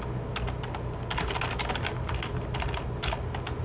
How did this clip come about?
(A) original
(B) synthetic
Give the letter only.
A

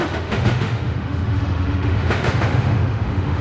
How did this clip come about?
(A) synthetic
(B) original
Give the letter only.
A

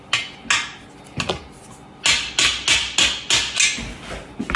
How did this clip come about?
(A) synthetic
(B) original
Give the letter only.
B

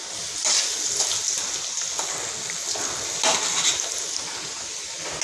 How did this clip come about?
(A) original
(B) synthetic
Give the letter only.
A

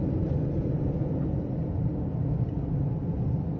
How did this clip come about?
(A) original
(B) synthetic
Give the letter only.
A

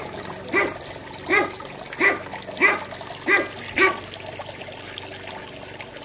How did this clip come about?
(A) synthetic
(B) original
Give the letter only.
B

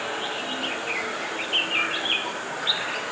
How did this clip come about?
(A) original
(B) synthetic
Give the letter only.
A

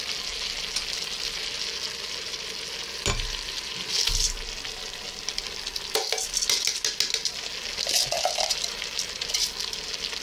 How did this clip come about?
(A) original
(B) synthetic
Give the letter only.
A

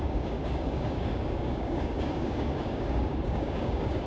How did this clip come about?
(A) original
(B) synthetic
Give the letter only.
B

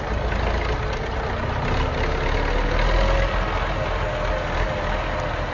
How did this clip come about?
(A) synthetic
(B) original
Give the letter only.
B